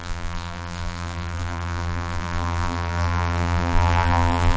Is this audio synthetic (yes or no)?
yes